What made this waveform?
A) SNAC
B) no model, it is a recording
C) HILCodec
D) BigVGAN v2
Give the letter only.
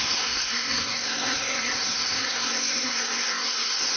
A